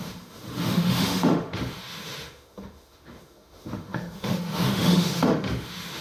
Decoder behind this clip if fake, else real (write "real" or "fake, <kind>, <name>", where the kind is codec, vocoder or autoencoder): fake, autoencoder, DAC-VAE